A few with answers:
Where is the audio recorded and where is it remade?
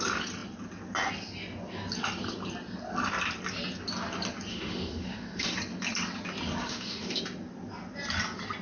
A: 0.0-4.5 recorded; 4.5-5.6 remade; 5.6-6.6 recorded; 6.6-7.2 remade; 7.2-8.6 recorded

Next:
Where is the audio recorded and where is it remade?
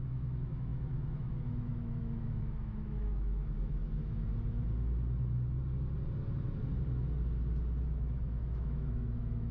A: 0.0-4.3 remade; 4.3-7.8 recorded; 7.8-9.5 remade